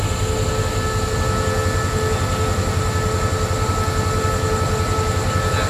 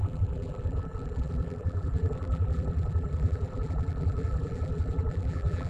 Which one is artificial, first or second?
second